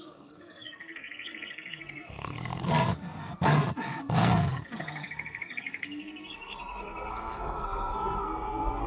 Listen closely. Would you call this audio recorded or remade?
remade